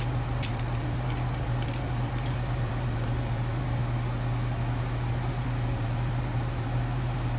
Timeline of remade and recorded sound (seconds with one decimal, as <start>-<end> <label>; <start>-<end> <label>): 0.0-3.8 remade; 3.8-5.1 recorded; 5.1-7.4 remade